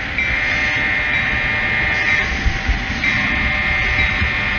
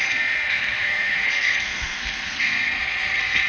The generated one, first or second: second